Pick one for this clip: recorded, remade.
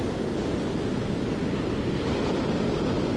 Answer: recorded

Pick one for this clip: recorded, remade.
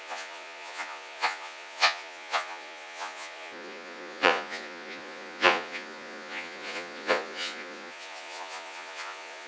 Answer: remade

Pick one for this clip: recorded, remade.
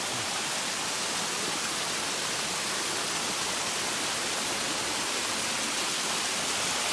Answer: recorded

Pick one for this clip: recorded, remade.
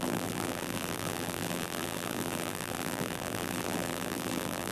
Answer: remade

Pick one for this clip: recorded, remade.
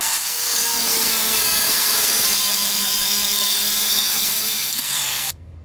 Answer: remade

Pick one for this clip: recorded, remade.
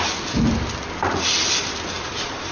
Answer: recorded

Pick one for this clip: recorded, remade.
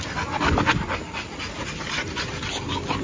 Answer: recorded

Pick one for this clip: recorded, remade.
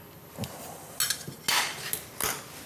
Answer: recorded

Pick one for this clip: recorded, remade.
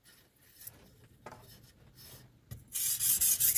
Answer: recorded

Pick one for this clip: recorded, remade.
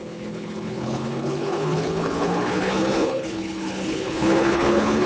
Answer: remade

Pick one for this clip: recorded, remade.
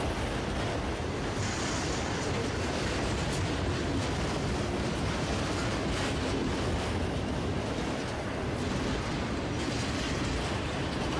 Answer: recorded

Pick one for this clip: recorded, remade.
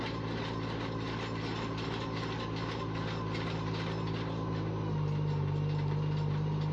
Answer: recorded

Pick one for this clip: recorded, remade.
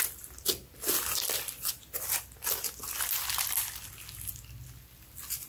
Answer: recorded